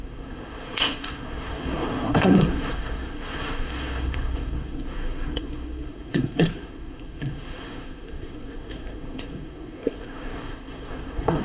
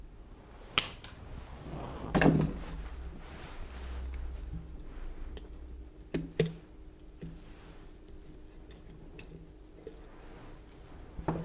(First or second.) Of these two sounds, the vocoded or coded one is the first